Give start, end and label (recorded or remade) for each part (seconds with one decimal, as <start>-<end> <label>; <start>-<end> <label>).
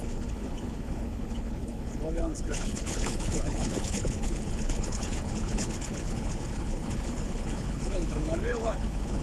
0.0-9.2 remade